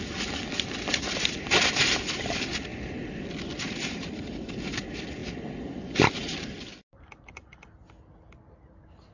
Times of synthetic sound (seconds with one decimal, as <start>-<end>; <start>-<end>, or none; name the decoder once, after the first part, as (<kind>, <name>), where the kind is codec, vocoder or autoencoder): none